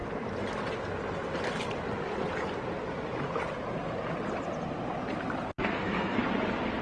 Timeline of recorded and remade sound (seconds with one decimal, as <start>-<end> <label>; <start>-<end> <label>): 0.0-5.5 recorded; 5.5-6.2 remade; 6.2-6.8 recorded